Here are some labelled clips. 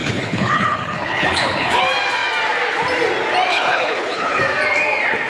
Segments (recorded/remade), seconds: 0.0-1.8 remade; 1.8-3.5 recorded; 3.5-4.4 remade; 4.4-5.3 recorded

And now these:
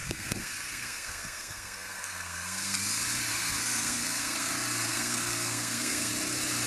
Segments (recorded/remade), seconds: 0.0-2.8 remade; 2.8-3.3 recorded; 3.3-4.5 remade; 4.5-4.9 recorded; 4.9-6.1 remade; 6.1-6.7 recorded

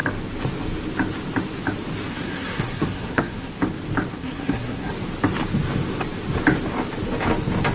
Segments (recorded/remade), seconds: 0.0-2.1 recorded; 2.1-3.5 remade; 3.5-4.1 recorded; 4.1-4.9 remade; 4.9-7.7 recorded

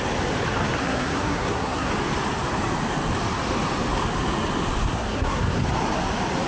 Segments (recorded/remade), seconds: 0.0-0.8 recorded; 0.8-1.9 remade; 1.9-4.9 recorded; 4.9-5.6 remade; 5.6-6.5 recorded

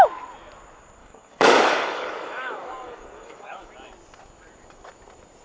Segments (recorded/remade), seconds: 0.0-1.0 recorded; 1.0-3.7 remade; 3.7-5.4 recorded